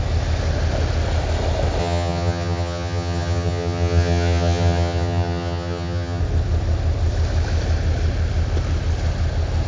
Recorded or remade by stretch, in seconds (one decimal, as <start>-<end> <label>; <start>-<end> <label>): 0.0-1.8 recorded; 1.8-6.2 remade; 6.2-9.7 recorded